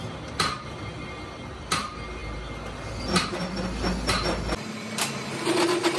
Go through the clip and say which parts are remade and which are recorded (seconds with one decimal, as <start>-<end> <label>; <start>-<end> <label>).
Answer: 0.0-6.0 recorded